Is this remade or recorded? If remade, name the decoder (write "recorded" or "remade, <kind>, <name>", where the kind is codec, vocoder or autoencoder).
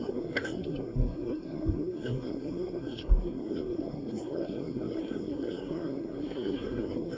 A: remade, codec, SNAC